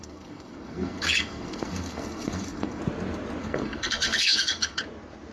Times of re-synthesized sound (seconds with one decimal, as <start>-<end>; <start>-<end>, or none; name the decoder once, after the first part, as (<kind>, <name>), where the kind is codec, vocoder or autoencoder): 0.0-2.8 (codec, SNAC); 3.4-4.8